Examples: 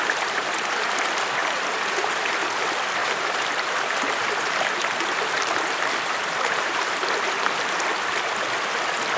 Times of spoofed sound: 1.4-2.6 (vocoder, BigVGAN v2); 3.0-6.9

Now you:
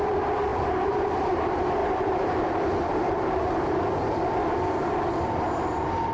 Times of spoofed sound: 0.5-1.4 (vocoder, BigVGAN v2); 1.8-2.5; 2.9-3.5

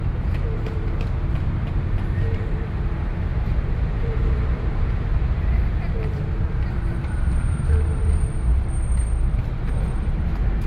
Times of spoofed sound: 0.0-3.3 (vocoder, BigVGAN v2); 3.9-8.5; 9.3-10.7

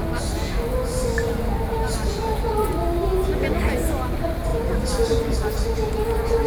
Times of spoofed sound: none

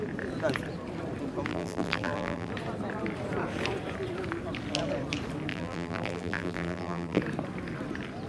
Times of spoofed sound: 1.5-2.5 (vocoder, BigVGAN v2); 5.5-7.2